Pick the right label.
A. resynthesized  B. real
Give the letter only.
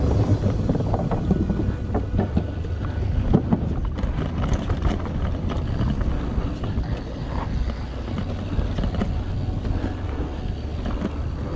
B